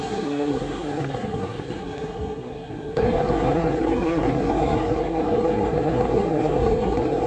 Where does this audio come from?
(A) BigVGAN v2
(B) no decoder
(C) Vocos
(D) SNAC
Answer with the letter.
D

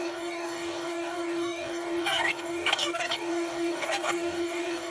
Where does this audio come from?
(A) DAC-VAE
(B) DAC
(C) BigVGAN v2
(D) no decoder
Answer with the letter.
B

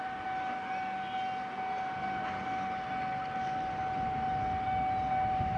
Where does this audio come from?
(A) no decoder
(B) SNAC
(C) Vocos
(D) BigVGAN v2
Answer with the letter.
A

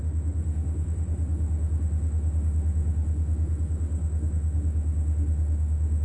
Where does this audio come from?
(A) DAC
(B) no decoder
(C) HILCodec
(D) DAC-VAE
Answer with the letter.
D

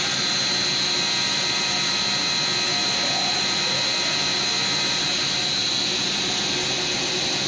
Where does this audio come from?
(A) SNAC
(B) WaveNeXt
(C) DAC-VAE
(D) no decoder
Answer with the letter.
D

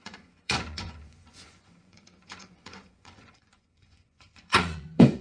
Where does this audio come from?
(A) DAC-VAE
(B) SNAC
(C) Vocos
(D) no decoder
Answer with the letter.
C